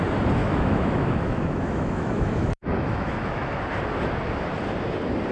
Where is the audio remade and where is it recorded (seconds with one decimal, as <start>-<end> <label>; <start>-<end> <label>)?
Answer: 0.0-0.4 recorded; 0.4-3.6 remade; 3.6-5.3 recorded